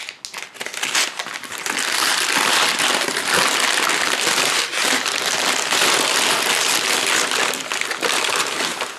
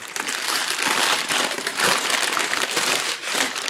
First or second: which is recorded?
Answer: first